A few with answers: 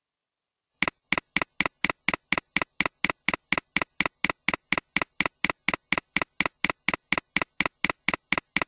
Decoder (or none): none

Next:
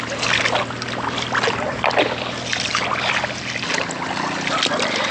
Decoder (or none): none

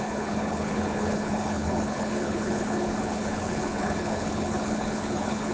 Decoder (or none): codec, HILCodec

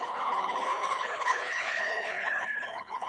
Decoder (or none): codec, HILCodec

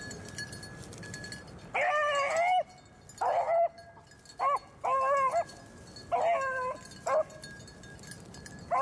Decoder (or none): none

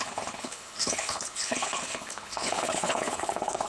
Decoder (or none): codec, HILCodec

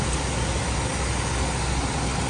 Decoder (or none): none